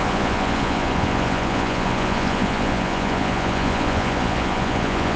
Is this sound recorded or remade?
remade